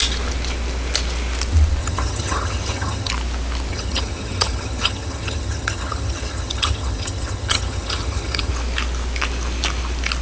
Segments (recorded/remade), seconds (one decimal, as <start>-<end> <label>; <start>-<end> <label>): 0.0-1.8 recorded; 1.8-3.1 remade; 3.1-3.7 recorded; 3.7-8.5 remade; 8.5-10.2 recorded